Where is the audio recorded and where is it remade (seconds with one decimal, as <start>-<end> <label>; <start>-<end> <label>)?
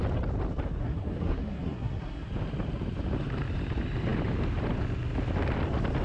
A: 0.0-0.8 recorded; 0.8-2.3 remade; 2.3-6.0 recorded